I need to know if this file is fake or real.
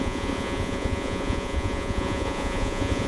fake